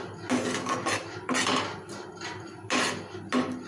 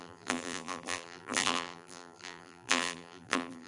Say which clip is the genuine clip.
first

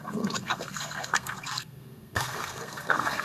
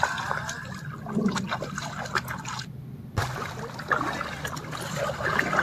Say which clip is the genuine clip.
second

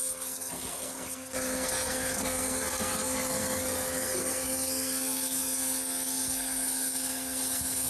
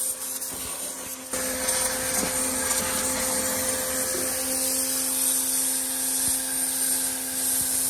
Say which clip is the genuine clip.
second